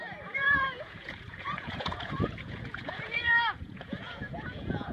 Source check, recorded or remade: remade